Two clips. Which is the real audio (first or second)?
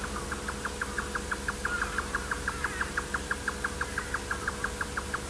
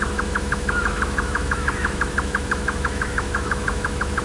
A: first